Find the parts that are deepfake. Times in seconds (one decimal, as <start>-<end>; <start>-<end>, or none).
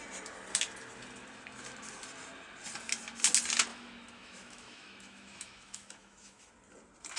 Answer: 3.7-6.5